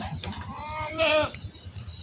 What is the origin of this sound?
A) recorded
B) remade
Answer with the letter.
A